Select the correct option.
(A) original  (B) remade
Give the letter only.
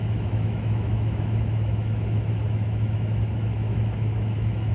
B